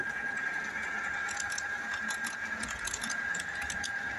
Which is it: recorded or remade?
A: remade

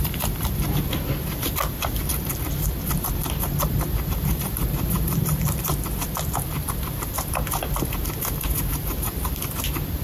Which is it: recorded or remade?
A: remade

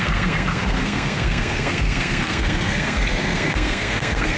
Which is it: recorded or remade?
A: remade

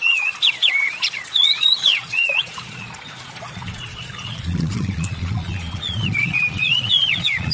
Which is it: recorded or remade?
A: remade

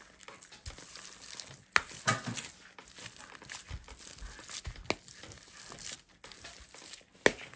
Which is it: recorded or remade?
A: recorded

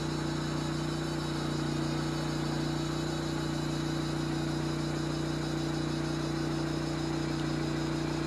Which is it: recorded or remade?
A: recorded